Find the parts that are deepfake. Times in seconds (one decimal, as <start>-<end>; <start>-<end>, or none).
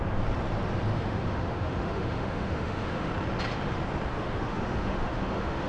0.9-3.1; 4.1-5.7